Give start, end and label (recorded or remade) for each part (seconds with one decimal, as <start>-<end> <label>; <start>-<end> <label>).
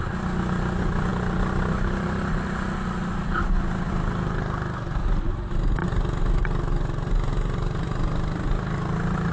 0.0-9.3 recorded